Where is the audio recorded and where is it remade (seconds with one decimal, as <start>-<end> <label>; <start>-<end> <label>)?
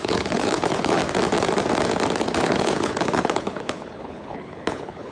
0.0-1.0 remade; 1.0-2.4 recorded; 2.4-5.1 remade